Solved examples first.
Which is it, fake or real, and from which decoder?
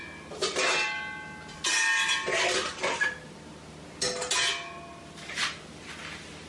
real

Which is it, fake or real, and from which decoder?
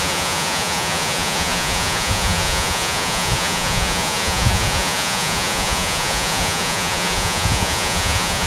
fake, vocoder, Vocos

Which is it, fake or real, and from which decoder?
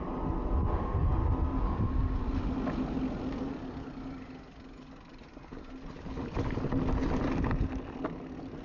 real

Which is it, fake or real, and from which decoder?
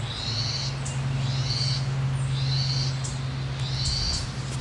real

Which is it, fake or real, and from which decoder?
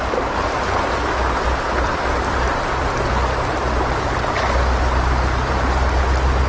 real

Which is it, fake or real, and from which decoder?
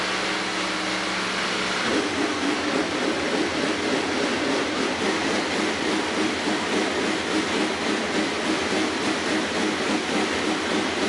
real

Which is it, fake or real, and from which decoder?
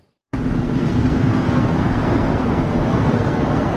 fake, codec, SNAC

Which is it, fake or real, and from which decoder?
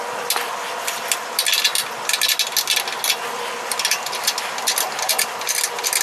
real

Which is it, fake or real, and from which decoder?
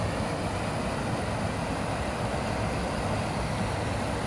real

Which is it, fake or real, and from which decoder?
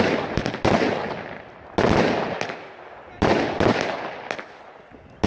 real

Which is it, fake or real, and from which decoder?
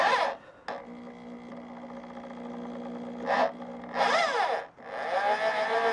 real